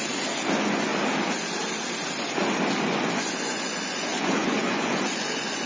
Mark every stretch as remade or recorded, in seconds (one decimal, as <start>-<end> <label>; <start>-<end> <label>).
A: 0.0-0.5 recorded; 0.5-0.9 remade; 0.9-2.8 recorded; 2.8-5.7 remade